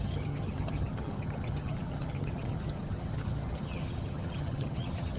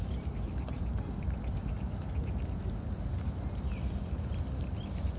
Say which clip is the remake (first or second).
first